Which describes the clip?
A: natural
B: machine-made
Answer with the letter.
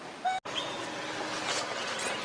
A